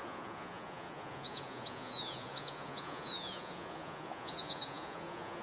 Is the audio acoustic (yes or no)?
no